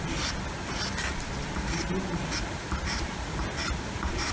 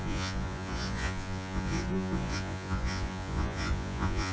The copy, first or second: second